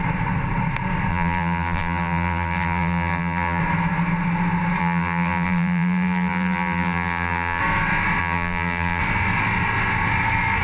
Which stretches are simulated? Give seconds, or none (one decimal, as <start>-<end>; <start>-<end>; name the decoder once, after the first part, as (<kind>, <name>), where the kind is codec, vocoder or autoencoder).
1.1-3.6 (vocoder, BigVGAN v2); 4.8-7.6; 8.2-9.0